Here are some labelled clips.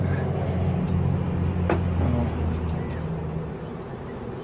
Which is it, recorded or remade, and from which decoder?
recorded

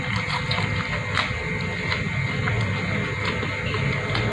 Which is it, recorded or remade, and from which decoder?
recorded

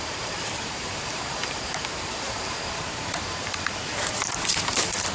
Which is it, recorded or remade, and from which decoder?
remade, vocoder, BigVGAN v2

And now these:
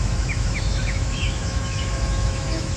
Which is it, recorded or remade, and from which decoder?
remade, autoencoder, DAC-VAE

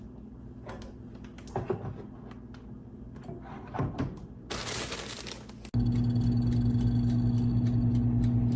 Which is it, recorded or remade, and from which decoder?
recorded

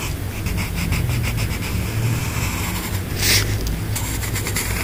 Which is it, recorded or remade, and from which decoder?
recorded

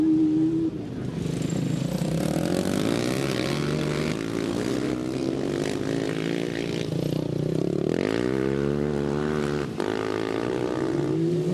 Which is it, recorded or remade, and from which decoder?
recorded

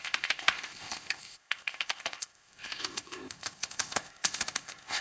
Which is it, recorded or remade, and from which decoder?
remade, codec, ZipCodec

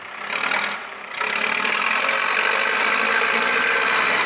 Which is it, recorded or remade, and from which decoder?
recorded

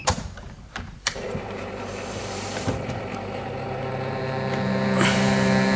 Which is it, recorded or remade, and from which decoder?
remade, vocoder, BigVGAN v2